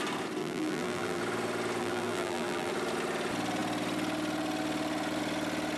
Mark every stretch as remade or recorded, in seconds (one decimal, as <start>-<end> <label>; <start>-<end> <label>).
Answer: 0.0-0.4 recorded; 0.4-1.2 remade; 1.2-1.8 recorded; 1.8-2.7 remade; 2.7-5.8 recorded